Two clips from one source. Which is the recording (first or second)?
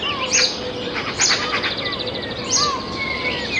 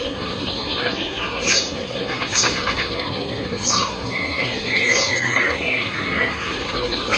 first